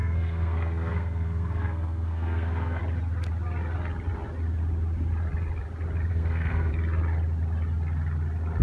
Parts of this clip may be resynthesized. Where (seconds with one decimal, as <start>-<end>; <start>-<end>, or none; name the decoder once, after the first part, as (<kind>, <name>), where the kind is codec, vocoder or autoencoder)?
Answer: 0.0-2.8 (codec, SNAC); 6.1-6.7